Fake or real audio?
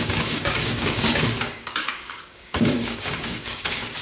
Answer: fake